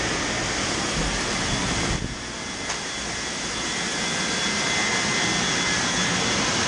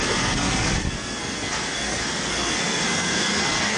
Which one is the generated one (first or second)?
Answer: second